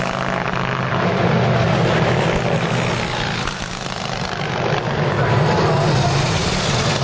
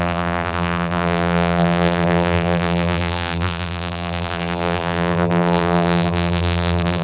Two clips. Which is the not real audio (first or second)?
second